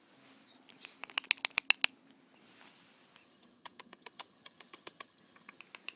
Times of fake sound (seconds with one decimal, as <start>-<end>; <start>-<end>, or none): 3.2-5.6